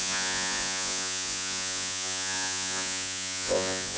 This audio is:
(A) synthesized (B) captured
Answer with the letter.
A